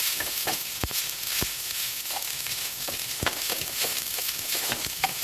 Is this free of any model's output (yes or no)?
no